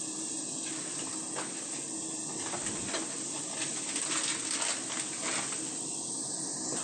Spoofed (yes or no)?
no